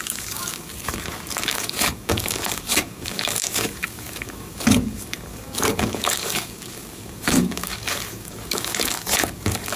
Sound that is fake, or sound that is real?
fake